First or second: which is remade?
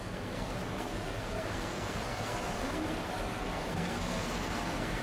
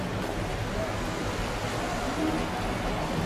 first